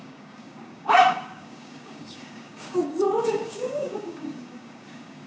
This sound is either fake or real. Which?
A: fake